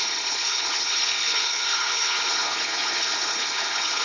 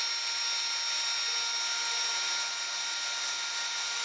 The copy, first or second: first